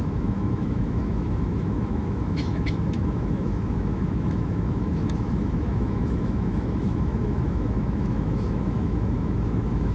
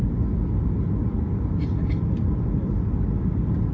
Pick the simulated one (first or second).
first